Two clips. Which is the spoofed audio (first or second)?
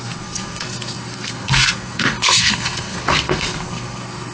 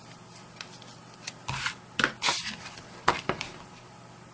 first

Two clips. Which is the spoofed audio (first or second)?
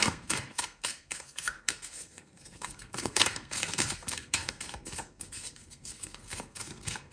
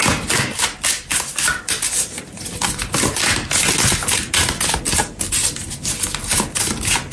first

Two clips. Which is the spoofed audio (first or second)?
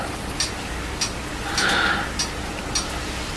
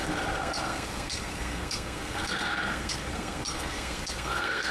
second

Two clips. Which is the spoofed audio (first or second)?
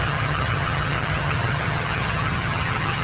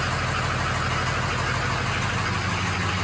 first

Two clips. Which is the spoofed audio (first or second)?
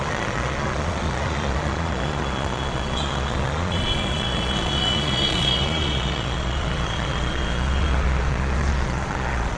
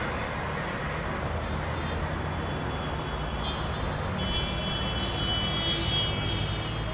first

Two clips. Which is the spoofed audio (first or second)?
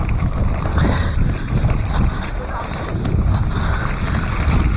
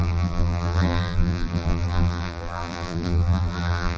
second